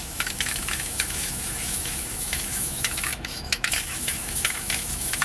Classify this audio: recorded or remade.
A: remade